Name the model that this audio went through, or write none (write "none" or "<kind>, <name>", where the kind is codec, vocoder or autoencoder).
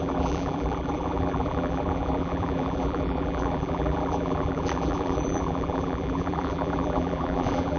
vocoder, BigVGAN v2